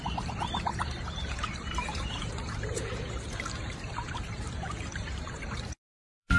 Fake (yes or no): yes